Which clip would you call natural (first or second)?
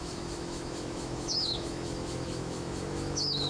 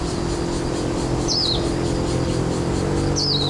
second